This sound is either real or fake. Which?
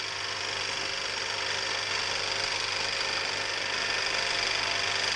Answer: real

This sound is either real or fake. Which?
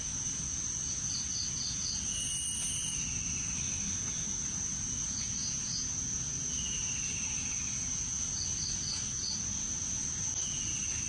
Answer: real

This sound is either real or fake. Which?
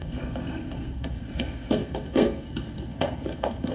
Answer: fake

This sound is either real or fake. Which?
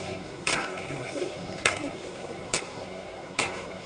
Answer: fake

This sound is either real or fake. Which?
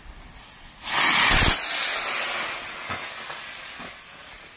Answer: real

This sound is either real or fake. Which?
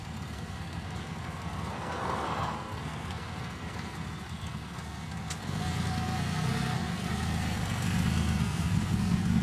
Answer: fake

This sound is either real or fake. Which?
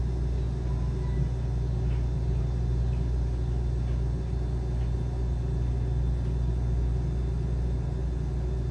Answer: real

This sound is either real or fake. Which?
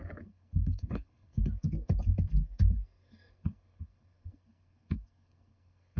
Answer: fake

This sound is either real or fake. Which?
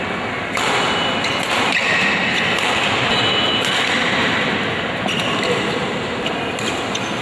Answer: real